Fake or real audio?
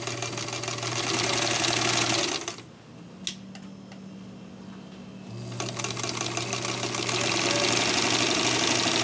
real